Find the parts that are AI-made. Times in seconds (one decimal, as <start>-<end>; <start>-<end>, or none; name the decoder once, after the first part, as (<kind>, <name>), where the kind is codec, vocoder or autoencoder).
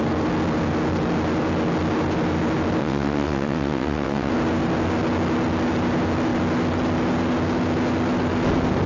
2.8-4.3 (vocoder, WaveNeXt)